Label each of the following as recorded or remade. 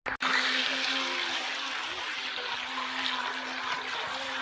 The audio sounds recorded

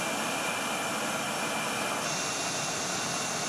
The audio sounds recorded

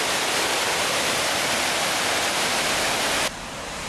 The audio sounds remade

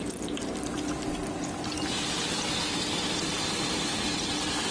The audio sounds recorded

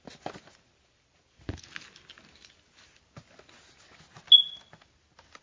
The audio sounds recorded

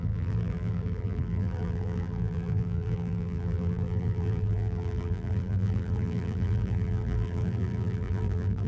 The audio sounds remade